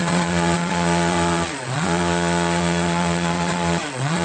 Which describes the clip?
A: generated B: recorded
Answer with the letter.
A